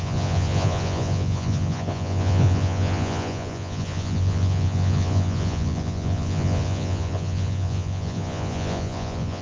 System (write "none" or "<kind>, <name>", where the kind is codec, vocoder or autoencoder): vocoder, Vocos